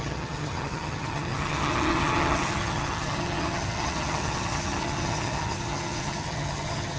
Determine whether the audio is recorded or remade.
remade